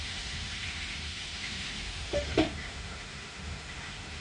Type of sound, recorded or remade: remade